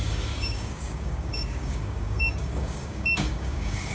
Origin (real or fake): fake